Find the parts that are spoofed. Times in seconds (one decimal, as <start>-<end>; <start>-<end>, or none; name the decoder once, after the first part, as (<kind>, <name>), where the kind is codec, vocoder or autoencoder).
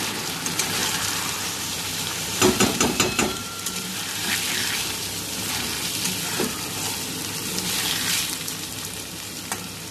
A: 0.8-4.3 (vocoder, BigVGAN v2)